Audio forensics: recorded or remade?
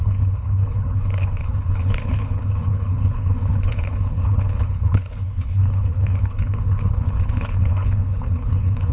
remade